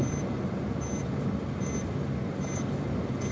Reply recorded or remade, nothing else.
recorded